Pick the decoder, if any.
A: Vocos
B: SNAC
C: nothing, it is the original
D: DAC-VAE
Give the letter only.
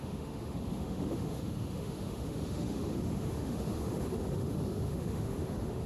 D